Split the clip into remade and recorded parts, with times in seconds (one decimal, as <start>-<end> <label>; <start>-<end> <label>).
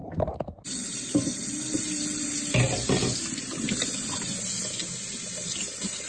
0.0-6.1 recorded